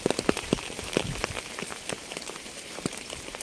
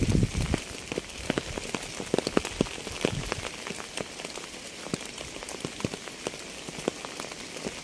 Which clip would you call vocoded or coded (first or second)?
first